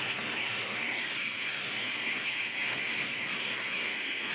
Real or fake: fake